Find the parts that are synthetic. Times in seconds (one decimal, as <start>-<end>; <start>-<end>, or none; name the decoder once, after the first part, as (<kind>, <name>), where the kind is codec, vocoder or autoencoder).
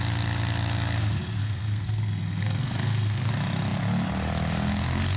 1.4-3.3 (codec, SNAC)